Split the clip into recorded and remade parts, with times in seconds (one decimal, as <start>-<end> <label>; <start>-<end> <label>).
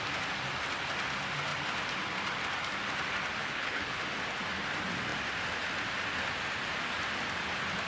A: 0.0-3.4 recorded; 3.4-4.0 remade; 4.0-7.9 recorded